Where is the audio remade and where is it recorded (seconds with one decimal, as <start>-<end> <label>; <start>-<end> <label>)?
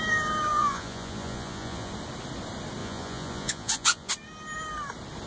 0.0-0.5 recorded; 0.5-1.9 remade; 1.9-2.8 recorded; 2.8-4.1 remade; 4.1-5.3 recorded